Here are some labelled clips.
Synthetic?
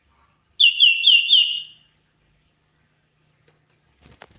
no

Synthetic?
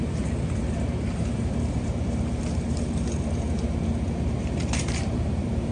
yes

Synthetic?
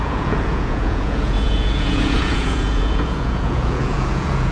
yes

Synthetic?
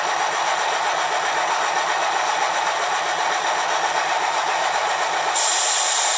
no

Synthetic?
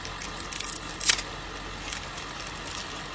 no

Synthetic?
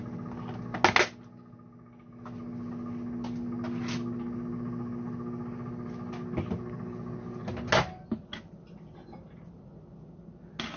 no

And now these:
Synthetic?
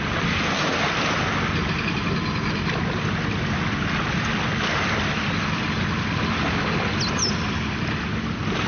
no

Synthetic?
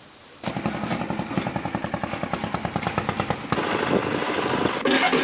no